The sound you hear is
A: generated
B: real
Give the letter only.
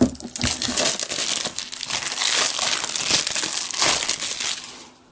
B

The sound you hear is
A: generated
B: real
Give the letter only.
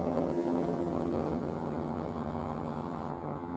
A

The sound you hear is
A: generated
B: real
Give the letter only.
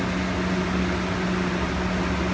B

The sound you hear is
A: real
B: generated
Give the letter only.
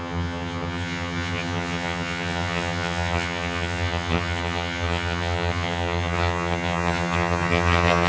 B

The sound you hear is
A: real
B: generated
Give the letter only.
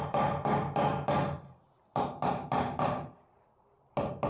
A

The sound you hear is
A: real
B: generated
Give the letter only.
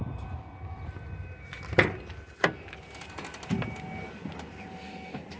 A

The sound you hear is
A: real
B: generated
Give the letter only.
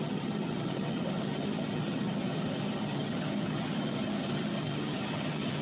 B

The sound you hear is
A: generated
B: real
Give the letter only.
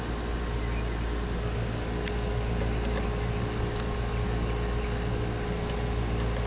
B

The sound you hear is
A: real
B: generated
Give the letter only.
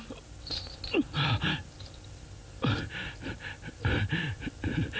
A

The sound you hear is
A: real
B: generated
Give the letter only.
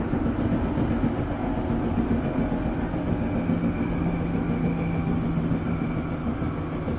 A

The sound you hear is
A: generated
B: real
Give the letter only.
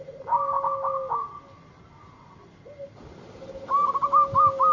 B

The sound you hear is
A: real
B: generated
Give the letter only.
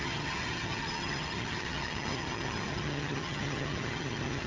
B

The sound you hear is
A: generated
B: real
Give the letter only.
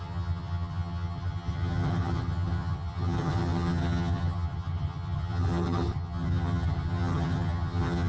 A